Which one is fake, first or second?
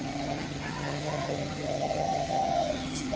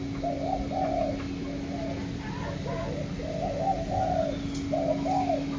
first